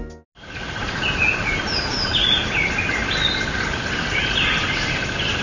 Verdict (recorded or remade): recorded